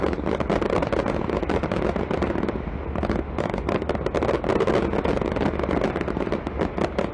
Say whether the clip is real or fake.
real